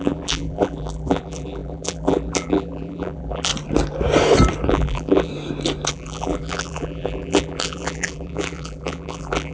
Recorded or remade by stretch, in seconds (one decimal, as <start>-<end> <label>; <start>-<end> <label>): 0.0-3.5 remade; 3.5-4.7 recorded; 4.7-5.3 remade; 5.3-5.9 recorded; 5.9-9.5 remade

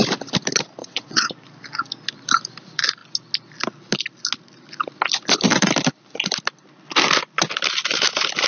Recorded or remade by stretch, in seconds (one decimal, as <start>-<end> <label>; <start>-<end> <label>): 0.0-0.8 recorded; 0.8-1.3 remade; 1.3-8.5 recorded

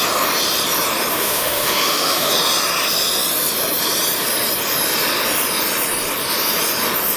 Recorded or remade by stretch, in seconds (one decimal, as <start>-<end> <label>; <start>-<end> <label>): 0.0-1.1 recorded; 1.1-2.3 remade; 2.3-7.2 recorded

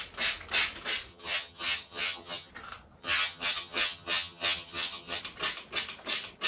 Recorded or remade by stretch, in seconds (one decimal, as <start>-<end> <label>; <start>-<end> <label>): 0.0-1.1 recorded; 1.1-2.5 remade; 2.5-3.0 recorded; 3.0-5.2 remade; 5.2-6.5 recorded

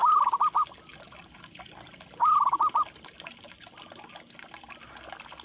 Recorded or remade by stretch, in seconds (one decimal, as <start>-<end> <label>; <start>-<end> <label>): 0.0-5.4 recorded